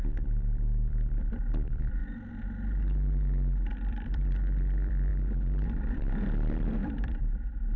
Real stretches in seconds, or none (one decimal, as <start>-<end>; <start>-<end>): 2.0-3.7; 5.1-5.9

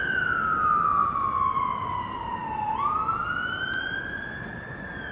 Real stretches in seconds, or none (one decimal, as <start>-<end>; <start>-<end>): 0.0-4.5

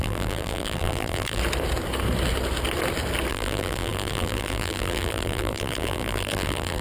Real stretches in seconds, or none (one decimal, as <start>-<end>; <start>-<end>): 1.4-3.3

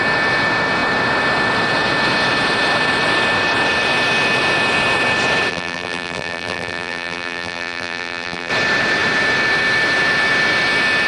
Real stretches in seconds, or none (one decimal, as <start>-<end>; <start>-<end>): 0.0-5.5; 8.5-11.1

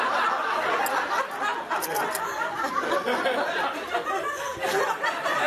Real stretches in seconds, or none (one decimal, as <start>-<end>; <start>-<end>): 0.0-4.5

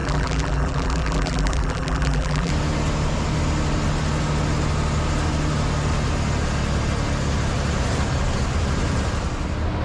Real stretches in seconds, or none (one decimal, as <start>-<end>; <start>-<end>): 2.5-9.8

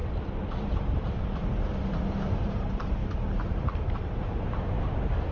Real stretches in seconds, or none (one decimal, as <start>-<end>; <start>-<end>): 0.0-0.7; 1.7-2.4; 3.0-3.9